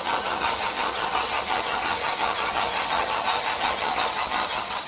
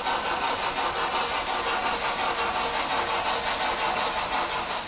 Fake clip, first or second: first